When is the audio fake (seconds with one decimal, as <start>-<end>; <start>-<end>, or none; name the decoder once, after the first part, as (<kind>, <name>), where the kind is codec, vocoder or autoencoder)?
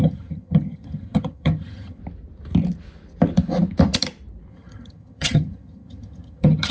0.0-2.0 (vocoder, HiFi-GAN); 4.5-6.7